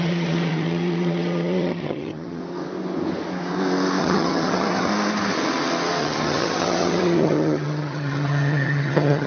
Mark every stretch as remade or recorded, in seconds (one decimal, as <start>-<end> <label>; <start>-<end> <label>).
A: 0.0-2.4 remade; 2.4-4.0 recorded; 4.0-4.9 remade; 4.9-6.0 recorded; 6.0-9.3 remade